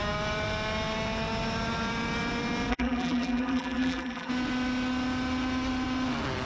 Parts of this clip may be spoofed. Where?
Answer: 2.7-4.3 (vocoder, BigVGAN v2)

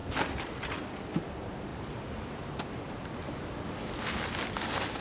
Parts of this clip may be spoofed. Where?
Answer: 0.0-0.6 (vocoder, BigVGAN v2)

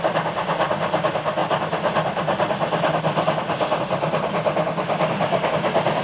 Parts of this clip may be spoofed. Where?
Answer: none